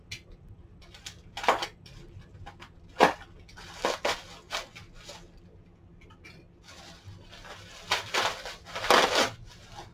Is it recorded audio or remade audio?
recorded